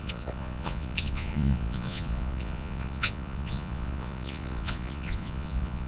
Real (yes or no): no